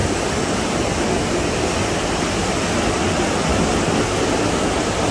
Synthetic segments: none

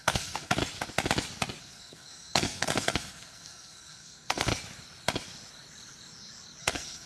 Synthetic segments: 0.0-0.6 (codec, SNAC); 1.6-4.5; 6.6-7.1